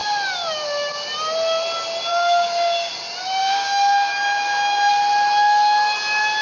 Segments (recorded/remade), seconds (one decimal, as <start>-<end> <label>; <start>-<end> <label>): 0.0-2.1 recorded; 2.1-2.9 remade; 2.9-3.4 recorded; 3.4-4.9 remade; 4.9-6.4 recorded